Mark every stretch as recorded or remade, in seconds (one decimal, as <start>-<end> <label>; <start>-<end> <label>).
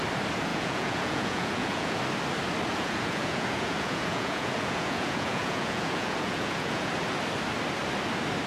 0.0-0.5 recorded; 0.5-2.0 remade; 2.0-2.7 recorded; 2.7-6.9 remade; 6.9-8.5 recorded